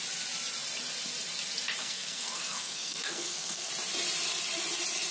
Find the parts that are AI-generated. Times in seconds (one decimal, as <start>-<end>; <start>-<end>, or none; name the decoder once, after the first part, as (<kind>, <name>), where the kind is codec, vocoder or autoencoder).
1.8-3.7 (codec, SNAC)